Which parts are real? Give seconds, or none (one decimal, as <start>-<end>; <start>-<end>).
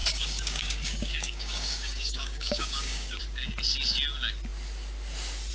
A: 3.2-5.5